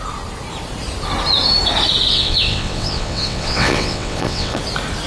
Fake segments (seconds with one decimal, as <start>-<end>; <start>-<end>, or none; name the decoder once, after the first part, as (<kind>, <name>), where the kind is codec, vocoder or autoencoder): 2.1-4.6 (vocoder, WaveNeXt)